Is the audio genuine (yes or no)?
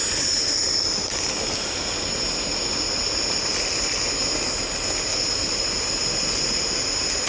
yes